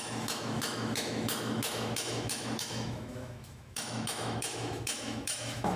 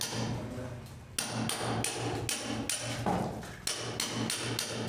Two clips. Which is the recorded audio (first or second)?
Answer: second